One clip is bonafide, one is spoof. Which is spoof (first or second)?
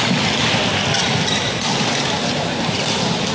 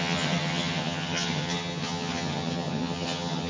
second